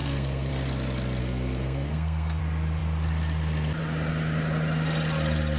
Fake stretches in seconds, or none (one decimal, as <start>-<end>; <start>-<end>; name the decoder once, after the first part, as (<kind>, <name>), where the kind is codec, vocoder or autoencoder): 0.0-0.5 (codec, SNAC); 1.2-2.4